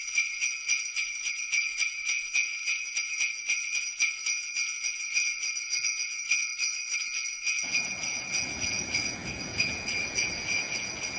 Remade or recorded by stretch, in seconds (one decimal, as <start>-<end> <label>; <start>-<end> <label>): 0.0-6.5 remade; 6.5-7.0 recorded; 7.0-11.2 remade